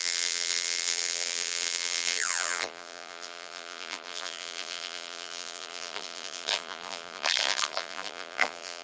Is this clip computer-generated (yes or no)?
yes